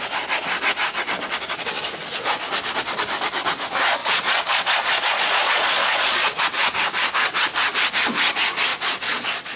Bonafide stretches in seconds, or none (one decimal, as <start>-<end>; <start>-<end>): 0.0-4.0; 6.4-8.7